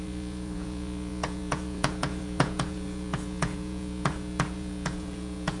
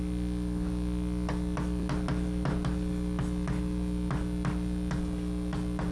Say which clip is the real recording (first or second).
second